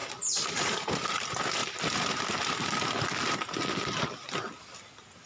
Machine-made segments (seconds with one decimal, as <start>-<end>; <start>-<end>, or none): none